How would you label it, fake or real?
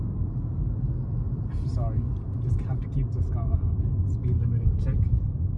real